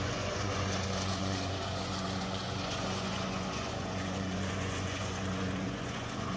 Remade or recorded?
remade